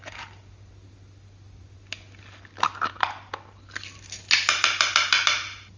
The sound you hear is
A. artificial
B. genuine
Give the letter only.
B